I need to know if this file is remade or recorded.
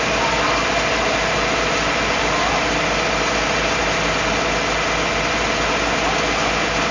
recorded